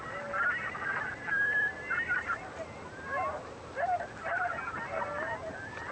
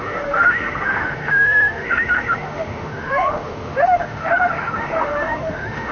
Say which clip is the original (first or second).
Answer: first